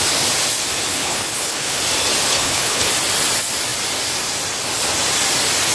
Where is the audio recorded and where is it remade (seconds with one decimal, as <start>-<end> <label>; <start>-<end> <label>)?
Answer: 0.0-0.9 recorded; 0.9-1.8 remade; 1.8-2.3 recorded; 2.3-2.9 remade; 2.9-5.7 recorded